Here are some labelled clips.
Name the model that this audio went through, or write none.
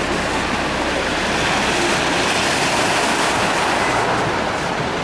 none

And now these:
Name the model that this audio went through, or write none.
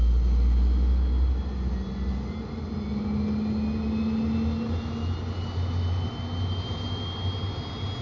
none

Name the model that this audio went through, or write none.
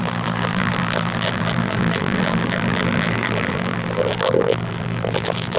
vocoder, BigVGAN v2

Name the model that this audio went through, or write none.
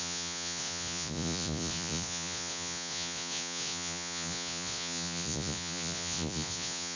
vocoder, Vocos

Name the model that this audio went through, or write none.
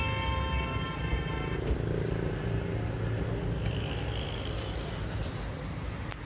none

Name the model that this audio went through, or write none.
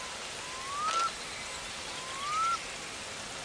none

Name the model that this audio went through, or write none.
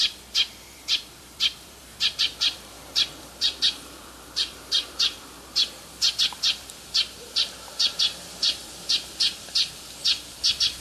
vocoder, BigVGAN v2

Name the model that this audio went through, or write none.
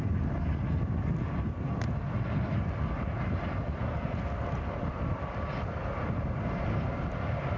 none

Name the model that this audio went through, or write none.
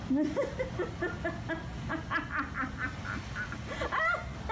none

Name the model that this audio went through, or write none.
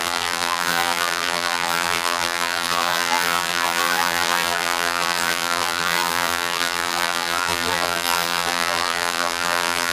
vocoder, BigVGAN v2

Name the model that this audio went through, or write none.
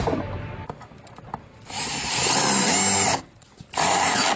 none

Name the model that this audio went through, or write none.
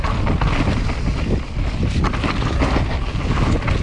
none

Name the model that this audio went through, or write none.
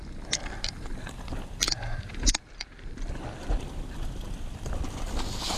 none